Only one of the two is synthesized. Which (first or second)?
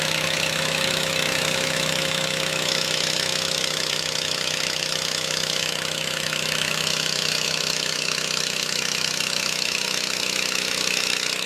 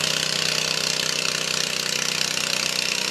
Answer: first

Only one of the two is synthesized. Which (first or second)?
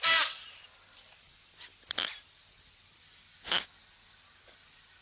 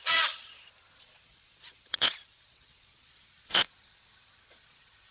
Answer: second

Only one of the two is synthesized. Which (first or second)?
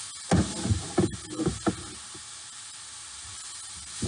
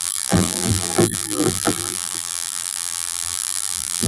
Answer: second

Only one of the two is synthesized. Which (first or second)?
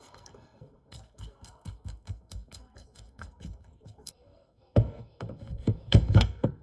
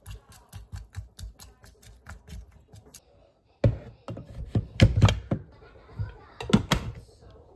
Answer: first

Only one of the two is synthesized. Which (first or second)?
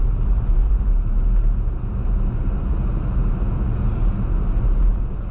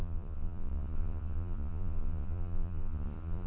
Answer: second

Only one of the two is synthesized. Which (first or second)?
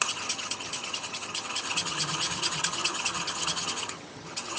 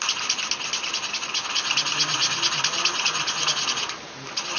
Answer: first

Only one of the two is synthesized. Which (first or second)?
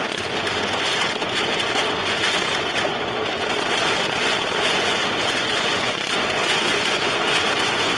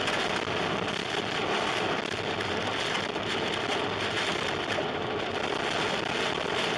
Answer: first